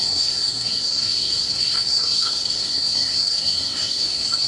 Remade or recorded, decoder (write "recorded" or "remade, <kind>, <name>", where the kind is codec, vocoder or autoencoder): remade, codec, SNAC